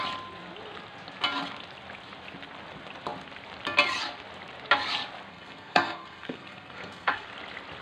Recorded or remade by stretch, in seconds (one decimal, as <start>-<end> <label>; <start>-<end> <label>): 0.0-5.3 recorded; 5.3-7.3 remade; 7.3-7.8 recorded

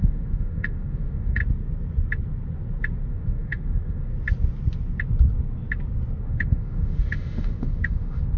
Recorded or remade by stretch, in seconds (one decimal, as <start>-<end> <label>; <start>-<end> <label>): 0.0-1.4 remade; 1.4-3.1 recorded; 3.1-4.1 remade; 4.1-6.2 recorded; 6.2-8.4 remade

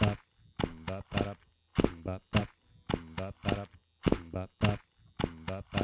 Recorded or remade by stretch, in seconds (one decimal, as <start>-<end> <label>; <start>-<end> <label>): 0.0-5.8 recorded

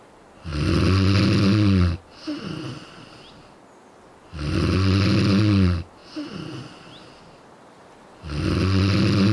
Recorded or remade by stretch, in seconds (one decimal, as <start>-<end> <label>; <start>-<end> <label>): 0.0-0.5 remade; 0.5-3.9 recorded; 3.9-6.0 remade; 6.0-8.5 recorded; 8.5-9.3 remade

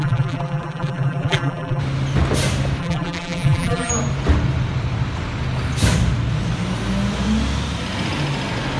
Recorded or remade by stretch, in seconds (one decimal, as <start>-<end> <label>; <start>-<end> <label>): 0.0-1.8 remade; 1.8-2.8 recorded; 2.8-3.9 remade; 3.9-8.8 recorded